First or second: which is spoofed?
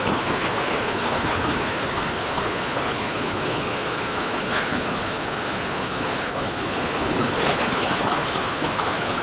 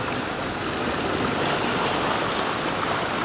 first